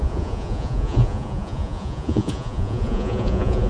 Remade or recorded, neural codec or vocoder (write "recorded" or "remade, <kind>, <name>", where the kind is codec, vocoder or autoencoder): remade, vocoder, Vocos